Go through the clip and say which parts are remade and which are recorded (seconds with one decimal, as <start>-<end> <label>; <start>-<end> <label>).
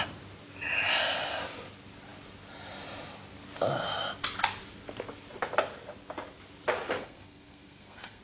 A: 0.0-7.0 recorded; 7.0-8.2 remade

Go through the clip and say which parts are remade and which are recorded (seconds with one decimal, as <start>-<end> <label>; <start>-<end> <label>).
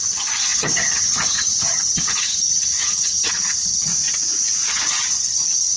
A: 0.0-3.9 remade; 3.9-4.7 recorded; 4.7-5.8 remade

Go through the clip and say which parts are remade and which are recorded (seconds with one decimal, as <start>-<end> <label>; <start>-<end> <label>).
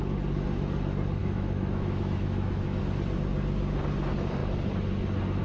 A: 0.0-1.2 recorded; 1.2-2.8 remade; 2.8-5.4 recorded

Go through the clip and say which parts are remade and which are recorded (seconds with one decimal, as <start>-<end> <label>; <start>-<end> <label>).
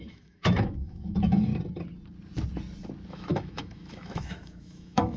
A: 0.0-1.5 remade; 1.5-3.1 recorded; 3.1-5.2 remade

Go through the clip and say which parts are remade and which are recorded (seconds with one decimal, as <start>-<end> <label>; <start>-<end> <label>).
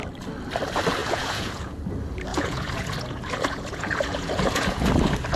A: 0.0-1.0 recorded; 1.0-1.8 remade; 1.8-2.3 recorded; 2.3-4.9 remade; 4.9-5.4 recorded